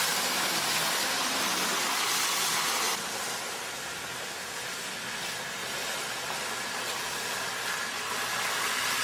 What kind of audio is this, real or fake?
real